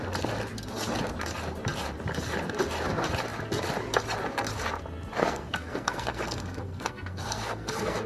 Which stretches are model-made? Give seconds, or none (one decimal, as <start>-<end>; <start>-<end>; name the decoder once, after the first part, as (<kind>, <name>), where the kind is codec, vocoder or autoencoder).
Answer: 5.2-8.1 (codec, SNAC)